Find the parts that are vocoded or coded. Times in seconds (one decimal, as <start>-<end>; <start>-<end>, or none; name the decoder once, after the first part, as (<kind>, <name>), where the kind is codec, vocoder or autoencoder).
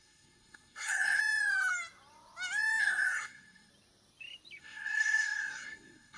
0.0-1.2 (codec, SNAC); 2.8-3.7; 4.6-6.2